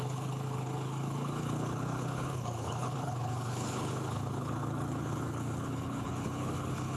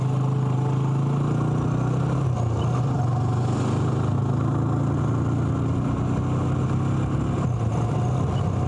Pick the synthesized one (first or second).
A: first